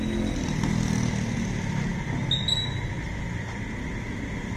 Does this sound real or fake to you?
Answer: real